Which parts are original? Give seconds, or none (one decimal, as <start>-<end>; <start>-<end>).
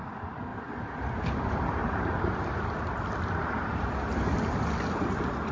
0.0-0.5; 1.9-5.5